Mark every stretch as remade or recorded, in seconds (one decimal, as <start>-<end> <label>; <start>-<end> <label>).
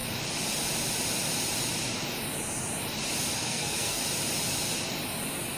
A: 0.0-3.4 recorded; 3.4-4.0 remade; 4.0-5.6 recorded